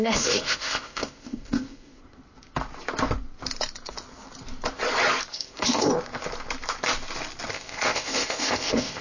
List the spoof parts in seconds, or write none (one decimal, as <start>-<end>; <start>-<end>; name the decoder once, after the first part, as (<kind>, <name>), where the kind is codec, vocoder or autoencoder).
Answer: 0.0-2.0 (codec, ZipCodec); 5.3-5.9; 7.5-9.0